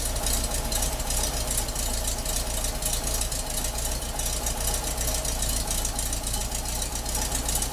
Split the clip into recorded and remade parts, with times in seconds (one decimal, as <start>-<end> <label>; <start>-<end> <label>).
0.0-7.7 recorded